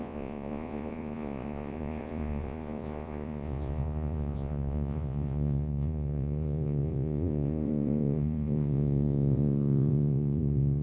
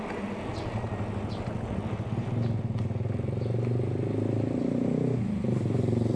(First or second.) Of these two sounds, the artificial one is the first